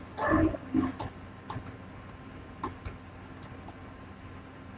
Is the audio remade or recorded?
recorded